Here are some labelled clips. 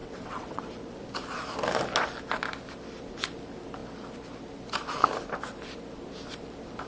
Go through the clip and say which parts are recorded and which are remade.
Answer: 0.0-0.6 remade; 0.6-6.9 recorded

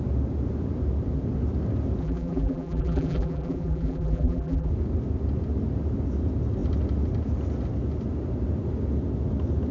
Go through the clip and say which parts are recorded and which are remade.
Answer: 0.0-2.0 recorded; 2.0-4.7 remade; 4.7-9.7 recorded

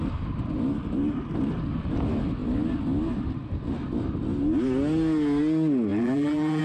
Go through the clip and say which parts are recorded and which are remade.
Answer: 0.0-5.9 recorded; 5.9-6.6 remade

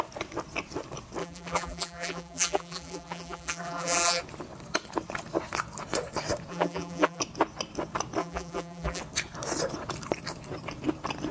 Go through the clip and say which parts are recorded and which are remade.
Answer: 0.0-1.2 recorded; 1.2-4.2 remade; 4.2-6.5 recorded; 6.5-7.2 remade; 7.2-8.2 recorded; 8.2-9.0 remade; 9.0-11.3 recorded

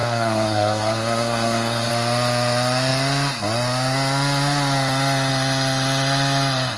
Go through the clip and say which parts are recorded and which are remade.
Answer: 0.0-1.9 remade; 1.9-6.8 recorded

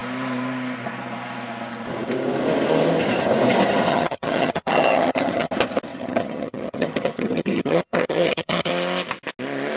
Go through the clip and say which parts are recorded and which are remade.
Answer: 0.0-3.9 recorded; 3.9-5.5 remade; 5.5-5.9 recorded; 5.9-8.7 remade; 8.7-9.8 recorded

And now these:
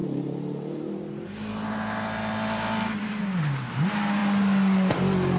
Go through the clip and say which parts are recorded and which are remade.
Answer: 0.0-5.4 recorded